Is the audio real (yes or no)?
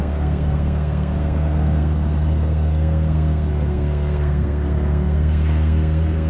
no